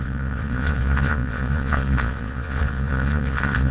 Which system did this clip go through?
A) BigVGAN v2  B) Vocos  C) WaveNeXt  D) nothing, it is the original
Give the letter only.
B